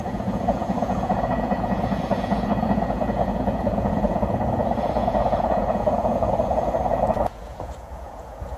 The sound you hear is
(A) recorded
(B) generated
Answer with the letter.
B